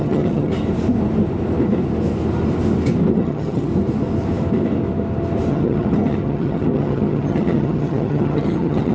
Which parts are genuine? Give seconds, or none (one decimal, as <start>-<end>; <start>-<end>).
0.5-3.1; 3.7-5.5

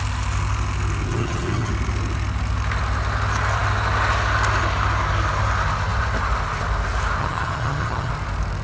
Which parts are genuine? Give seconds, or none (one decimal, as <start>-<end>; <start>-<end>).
0.0-1.1; 1.7-7.2; 8.1-8.6

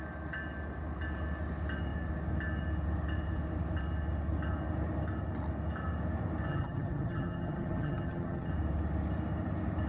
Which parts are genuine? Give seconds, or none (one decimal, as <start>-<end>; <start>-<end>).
0.0-6.5; 8.5-9.9

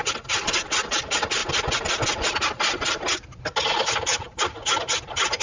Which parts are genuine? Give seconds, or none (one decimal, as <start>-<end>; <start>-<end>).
0.0-5.4

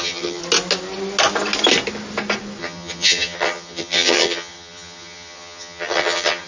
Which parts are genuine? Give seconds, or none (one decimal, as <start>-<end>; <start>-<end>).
0.4-2.6

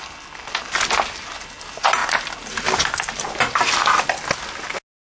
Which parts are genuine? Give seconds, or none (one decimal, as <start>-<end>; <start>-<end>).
0.0-5.1

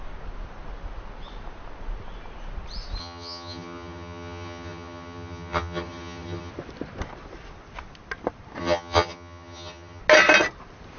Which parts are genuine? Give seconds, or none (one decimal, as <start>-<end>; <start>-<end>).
0.0-3.0; 6.5-8.6; 10.0-11.0

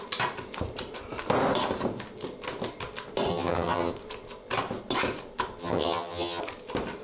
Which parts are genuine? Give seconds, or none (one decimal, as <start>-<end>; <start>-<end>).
0.0-3.3; 3.9-5.6; 6.4-7.0